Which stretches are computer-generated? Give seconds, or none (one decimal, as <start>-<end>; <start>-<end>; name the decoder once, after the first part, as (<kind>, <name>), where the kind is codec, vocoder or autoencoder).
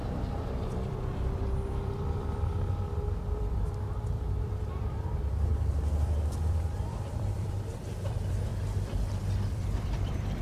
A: 0.0-8.5 (vocoder, BigVGAN v2); 9.2-10.4